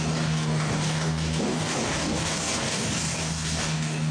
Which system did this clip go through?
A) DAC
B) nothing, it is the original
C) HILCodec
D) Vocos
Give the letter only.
A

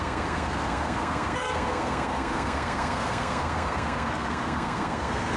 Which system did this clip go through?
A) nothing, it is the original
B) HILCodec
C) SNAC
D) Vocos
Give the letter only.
C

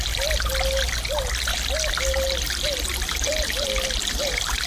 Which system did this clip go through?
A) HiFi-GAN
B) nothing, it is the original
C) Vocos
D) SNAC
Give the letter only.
B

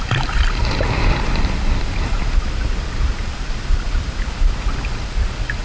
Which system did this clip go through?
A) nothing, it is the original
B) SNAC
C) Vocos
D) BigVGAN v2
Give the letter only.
D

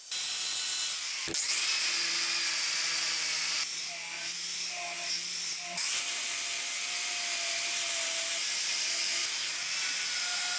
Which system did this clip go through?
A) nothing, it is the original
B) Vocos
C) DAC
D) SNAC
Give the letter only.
A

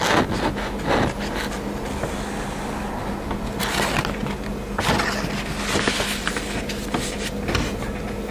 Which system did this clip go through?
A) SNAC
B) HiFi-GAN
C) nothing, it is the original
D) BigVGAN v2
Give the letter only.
C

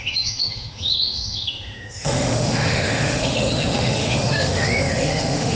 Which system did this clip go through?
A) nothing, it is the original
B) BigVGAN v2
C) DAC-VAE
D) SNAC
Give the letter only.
C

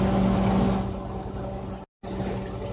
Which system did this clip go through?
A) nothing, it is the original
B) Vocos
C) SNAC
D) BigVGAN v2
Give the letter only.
A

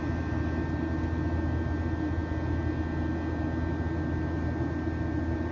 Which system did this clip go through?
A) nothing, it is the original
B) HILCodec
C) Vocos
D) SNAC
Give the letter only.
A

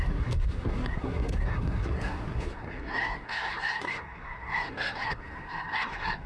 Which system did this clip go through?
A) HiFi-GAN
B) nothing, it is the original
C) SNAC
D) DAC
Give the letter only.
C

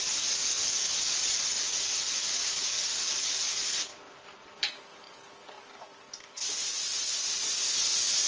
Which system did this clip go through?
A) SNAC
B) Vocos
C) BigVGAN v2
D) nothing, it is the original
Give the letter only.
D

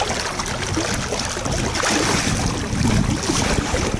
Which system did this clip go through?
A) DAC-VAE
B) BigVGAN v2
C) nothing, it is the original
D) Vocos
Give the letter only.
C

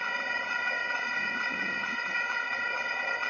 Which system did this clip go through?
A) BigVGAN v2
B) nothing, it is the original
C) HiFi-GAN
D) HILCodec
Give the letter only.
C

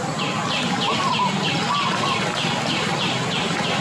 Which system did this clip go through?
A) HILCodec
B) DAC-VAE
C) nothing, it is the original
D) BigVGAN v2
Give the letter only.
C